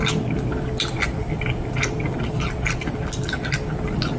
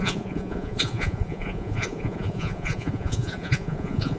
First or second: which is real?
first